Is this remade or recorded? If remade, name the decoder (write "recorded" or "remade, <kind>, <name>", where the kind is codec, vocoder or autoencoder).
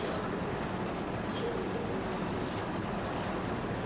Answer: recorded